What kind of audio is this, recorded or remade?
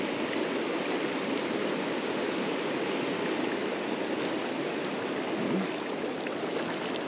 recorded